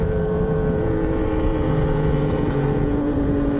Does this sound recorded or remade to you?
remade